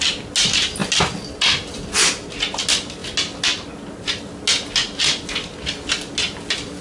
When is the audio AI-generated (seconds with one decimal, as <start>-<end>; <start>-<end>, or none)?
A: none